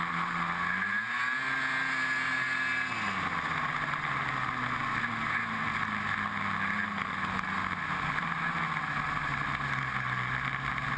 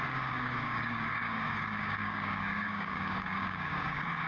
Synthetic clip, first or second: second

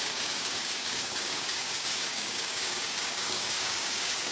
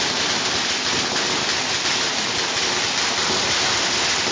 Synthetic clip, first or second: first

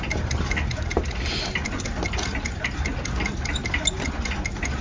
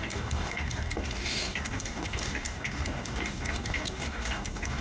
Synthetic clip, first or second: second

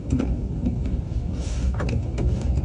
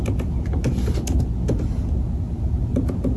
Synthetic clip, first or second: first